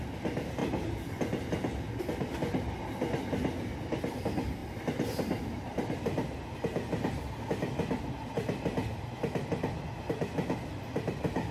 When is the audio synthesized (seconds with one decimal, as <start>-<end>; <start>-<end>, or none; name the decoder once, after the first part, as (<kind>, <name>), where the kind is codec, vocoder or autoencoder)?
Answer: none